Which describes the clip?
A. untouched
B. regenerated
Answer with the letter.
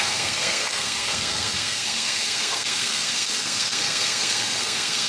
B